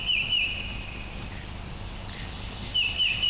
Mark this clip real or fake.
fake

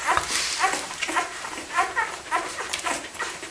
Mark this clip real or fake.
real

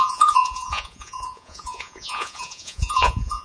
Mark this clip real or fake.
fake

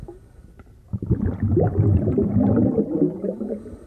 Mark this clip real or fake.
real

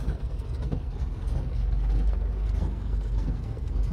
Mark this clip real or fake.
fake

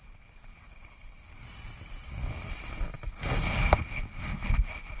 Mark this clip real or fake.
real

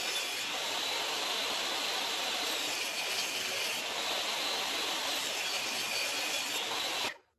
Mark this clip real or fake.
real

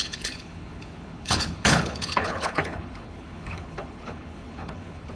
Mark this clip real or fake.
fake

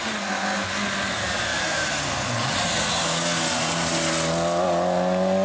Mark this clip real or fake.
real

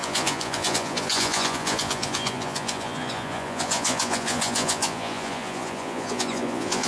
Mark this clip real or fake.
fake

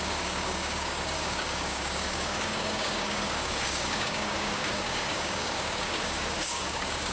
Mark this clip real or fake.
fake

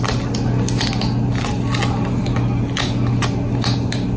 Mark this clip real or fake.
real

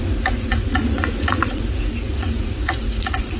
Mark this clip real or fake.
fake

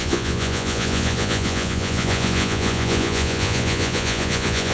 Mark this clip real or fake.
fake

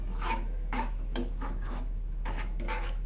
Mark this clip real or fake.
fake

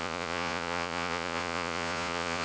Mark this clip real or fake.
fake